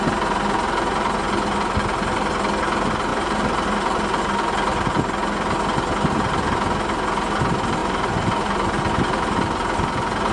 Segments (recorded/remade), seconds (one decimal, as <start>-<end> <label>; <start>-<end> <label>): 0.0-3.1 recorded; 3.1-4.2 remade; 4.2-7.8 recorded; 7.8-8.8 remade; 8.8-10.3 recorded